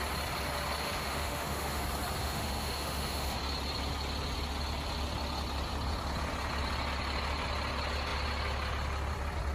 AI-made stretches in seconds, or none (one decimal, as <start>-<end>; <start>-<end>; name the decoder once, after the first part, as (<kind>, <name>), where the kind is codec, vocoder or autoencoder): 0.8-1.8 (autoencoder, DAC-VAE); 2.2-3.4